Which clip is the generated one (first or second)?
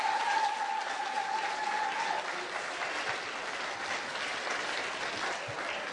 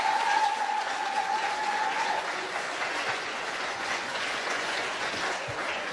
second